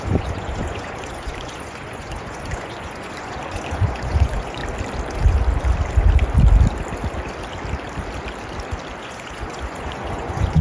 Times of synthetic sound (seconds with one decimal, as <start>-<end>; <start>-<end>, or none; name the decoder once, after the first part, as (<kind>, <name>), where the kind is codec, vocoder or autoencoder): 0.0-4.6 (vocoder, Vocos); 9.0-10.6